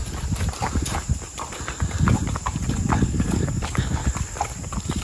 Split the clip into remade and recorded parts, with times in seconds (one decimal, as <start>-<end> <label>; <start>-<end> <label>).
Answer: 0.0-3.0 recorded; 3.0-4.0 remade; 4.0-5.0 recorded